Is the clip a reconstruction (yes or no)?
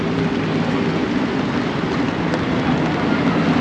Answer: no